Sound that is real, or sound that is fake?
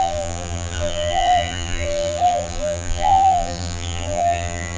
fake